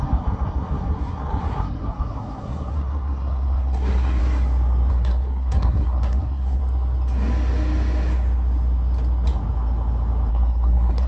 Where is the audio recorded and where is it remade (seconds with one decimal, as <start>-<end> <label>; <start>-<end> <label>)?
0.0-4.2 remade; 4.2-4.9 recorded; 4.9-6.6 remade; 6.6-10.3 recorded; 10.3-11.1 remade